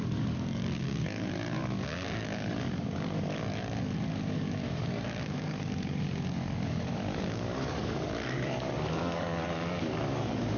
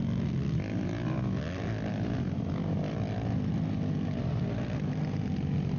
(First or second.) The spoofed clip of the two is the first